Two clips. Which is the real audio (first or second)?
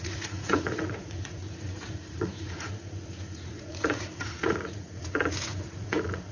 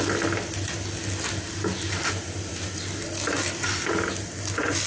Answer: second